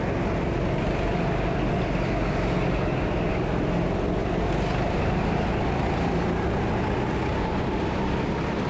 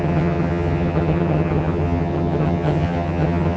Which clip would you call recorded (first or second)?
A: first